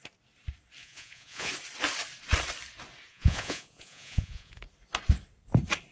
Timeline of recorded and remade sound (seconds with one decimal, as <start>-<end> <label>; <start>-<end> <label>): 0.0-0.8 recorded; 0.8-1.5 remade; 1.5-3.1 recorded; 3.1-4.6 remade; 4.6-5.9 recorded